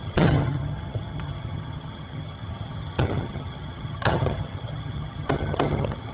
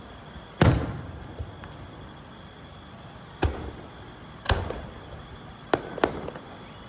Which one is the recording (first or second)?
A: second